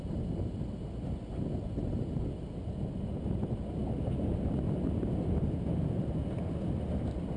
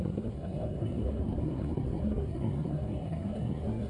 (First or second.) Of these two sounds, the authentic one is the first